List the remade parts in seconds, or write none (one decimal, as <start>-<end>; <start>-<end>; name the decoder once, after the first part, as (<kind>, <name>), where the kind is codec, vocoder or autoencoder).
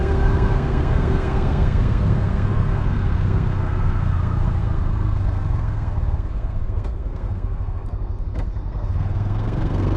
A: 0.0-10.0 (codec, SNAC)